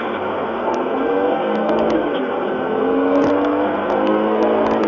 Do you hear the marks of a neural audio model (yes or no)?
yes